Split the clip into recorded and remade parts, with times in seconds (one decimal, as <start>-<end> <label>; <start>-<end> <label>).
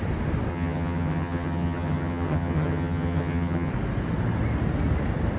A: 0.0-0.5 recorded; 0.5-3.7 remade; 3.7-5.4 recorded